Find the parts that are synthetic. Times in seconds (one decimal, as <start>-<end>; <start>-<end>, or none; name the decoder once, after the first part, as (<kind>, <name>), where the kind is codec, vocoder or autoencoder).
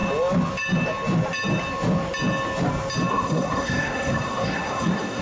3.1-5.2 (codec, SNAC)